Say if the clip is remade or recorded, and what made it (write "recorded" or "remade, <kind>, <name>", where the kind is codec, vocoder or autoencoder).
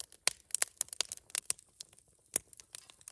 recorded